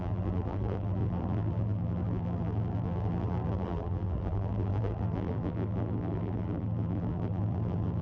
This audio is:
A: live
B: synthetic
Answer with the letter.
B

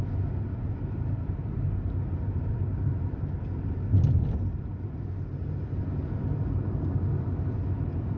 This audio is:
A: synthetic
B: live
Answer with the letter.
B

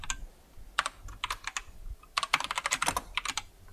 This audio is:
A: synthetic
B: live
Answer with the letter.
B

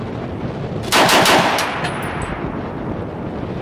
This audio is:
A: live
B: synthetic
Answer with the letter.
A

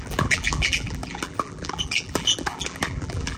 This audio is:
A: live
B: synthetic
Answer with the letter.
B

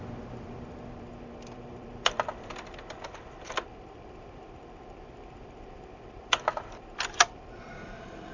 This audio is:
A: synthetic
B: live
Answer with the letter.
A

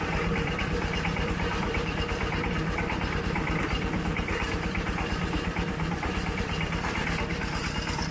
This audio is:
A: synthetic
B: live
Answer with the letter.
A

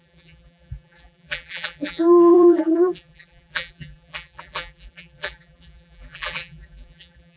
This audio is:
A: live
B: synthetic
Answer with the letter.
B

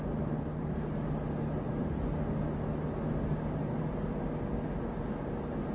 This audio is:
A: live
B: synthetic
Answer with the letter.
A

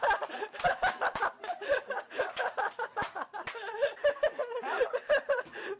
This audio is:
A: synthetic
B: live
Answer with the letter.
A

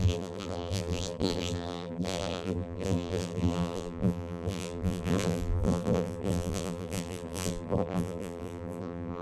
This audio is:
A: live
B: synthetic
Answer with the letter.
B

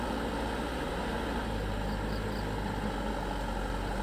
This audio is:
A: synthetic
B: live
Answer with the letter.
B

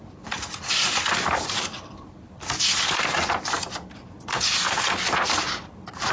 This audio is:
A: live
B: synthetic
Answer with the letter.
B